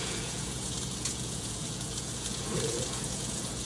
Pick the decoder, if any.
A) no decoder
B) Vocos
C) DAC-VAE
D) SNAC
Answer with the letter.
B